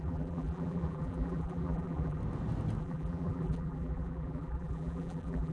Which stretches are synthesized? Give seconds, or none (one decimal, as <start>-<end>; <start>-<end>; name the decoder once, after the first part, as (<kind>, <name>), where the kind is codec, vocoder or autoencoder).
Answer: 0.0-2.2 (vocoder, BigVGAN v2); 2.8-5.5

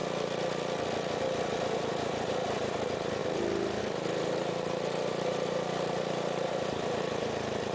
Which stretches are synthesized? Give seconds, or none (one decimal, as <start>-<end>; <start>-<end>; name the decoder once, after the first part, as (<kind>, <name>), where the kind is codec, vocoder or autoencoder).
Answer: 1.9-3.2 (vocoder, BigVGAN v2); 3.8-7.7

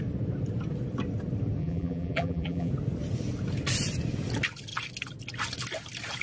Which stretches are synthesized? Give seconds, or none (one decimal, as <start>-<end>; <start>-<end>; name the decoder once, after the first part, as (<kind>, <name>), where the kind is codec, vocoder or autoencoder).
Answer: 1.6-2.7 (vocoder, BigVGAN v2)

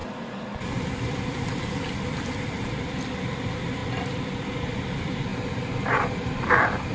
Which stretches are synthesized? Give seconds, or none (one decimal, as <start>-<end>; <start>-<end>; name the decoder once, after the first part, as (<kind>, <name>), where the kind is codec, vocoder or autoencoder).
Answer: 0.8-3.8 (vocoder, BigVGAN v2); 4.4-5.3; 6.1-6.9

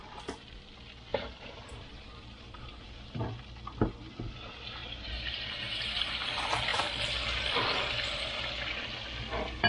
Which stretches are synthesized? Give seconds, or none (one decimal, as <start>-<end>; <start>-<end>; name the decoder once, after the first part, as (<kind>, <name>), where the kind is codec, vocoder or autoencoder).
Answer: 1.1-3.2 (vocoder, BigVGAN v2); 4.8-6.0

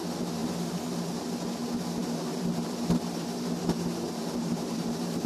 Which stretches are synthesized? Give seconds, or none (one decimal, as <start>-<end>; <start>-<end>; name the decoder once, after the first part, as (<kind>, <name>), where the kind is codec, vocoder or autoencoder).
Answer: 0.4-1.3 (vocoder, BigVGAN v2); 2.0-5.3

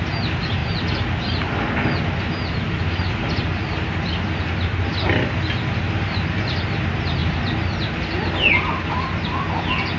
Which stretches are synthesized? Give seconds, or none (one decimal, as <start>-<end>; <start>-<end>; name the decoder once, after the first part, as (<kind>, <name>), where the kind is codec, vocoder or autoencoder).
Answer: 7.2-8.3 (vocoder, BigVGAN v2)

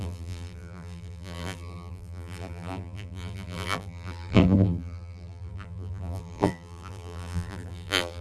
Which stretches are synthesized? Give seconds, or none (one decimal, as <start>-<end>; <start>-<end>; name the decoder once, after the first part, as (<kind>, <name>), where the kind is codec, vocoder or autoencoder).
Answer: 0.0-8.2 (vocoder, BigVGAN v2)